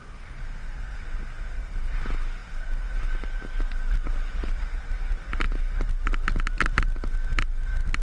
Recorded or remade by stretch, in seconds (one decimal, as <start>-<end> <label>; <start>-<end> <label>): 0.0-8.0 recorded